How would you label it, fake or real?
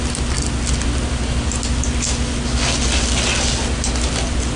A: real